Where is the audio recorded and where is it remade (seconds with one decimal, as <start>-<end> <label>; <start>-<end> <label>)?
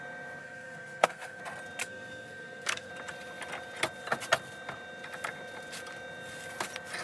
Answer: 0.0-0.4 recorded; 0.4-1.4 remade; 1.4-1.8 recorded; 1.8-2.9 remade; 2.9-7.0 recorded